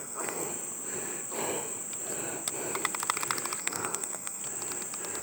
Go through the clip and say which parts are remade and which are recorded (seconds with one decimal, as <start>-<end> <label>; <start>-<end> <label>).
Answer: 0.0-0.5 remade; 0.5-3.6 recorded; 3.6-4.4 remade; 4.4-5.2 recorded